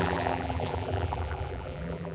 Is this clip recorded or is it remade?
remade